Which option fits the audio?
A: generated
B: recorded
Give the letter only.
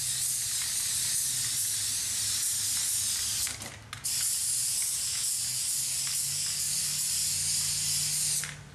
B